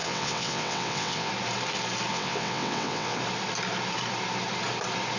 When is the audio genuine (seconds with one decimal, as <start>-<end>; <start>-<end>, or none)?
1.3-2.1; 3.2-5.2